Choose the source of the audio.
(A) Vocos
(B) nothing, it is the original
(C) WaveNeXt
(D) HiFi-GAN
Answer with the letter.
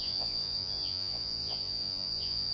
A